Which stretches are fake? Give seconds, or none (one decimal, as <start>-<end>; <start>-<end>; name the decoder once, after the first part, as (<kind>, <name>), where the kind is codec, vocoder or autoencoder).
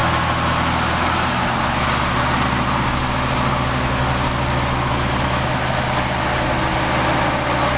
none